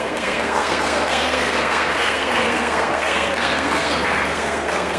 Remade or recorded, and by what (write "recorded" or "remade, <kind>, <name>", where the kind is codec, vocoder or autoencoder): remade, codec, SNAC